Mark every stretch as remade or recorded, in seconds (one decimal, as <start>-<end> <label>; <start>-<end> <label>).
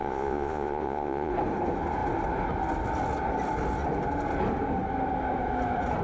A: 0.0-1.3 remade; 1.3-6.0 recorded